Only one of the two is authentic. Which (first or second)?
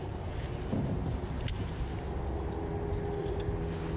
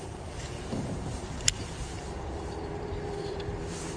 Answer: first